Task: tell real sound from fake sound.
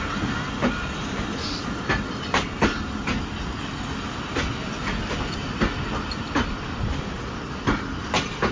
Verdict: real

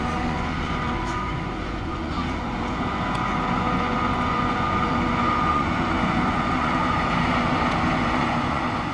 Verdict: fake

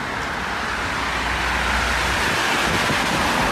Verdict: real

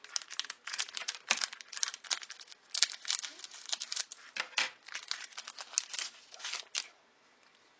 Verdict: real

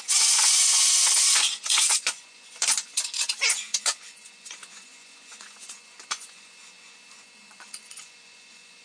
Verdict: fake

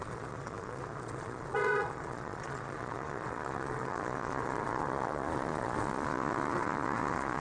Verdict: fake